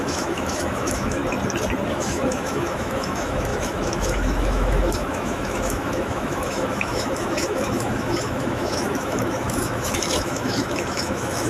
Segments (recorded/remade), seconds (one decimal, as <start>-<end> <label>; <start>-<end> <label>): 0.0-1.2 remade; 1.2-1.9 recorded; 1.9-11.5 remade